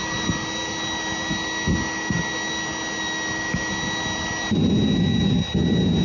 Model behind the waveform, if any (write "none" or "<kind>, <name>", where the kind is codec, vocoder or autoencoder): none